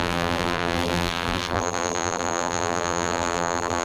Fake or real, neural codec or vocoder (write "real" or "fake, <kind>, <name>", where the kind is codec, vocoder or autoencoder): fake, vocoder, BigVGAN v2